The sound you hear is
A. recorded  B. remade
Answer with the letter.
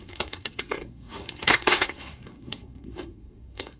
B